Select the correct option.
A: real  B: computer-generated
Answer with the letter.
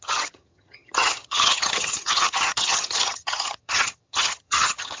B